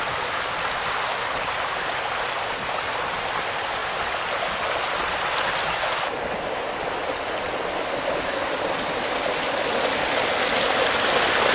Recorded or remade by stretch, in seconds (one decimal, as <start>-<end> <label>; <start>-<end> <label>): 0.0-11.5 recorded

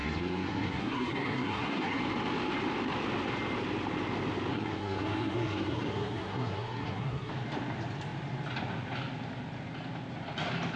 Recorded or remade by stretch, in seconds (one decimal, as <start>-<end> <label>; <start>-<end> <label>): 0.0-2.0 remade; 2.0-4.5 recorded; 4.5-7.3 remade; 7.3-10.8 recorded